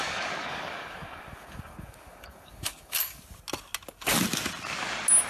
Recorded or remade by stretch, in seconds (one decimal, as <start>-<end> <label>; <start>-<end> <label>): 0.0-3.2 remade; 3.2-5.3 recorded